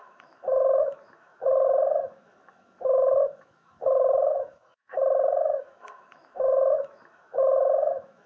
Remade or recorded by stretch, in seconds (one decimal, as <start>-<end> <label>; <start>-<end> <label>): 0.0-1.5 remade; 1.5-2.0 recorded; 2.0-8.3 remade